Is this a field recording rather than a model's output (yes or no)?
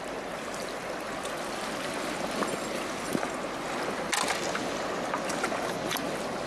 yes